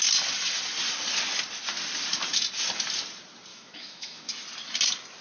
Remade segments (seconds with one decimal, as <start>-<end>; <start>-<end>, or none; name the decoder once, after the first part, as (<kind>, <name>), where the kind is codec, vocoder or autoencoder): 3.5-4.3 (autoencoder, DAC-VAE)